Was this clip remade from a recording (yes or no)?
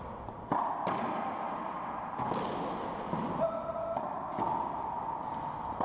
no